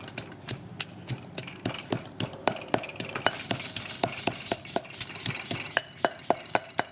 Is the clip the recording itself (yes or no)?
yes